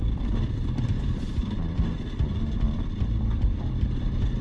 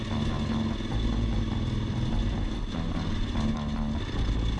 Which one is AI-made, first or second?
first